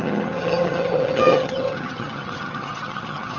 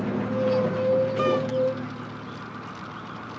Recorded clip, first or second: second